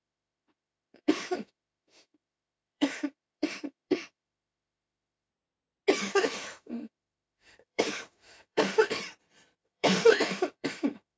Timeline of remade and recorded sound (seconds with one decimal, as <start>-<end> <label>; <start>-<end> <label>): 0.0-5.3 remade; 5.3-6.0 recorded; 6.0-9.0 remade; 9.0-9.6 recorded; 9.6-11.2 remade